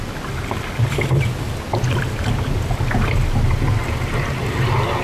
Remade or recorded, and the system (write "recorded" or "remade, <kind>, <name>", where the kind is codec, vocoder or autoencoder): recorded